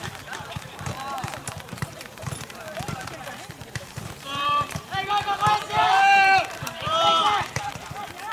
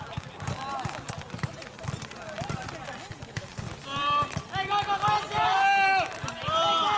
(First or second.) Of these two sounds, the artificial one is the first